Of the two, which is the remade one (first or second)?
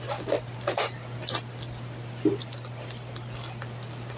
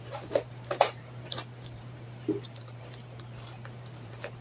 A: second